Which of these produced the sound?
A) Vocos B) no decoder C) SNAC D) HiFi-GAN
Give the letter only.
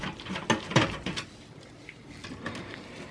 B